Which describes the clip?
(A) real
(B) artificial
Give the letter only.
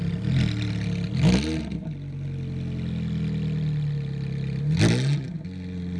A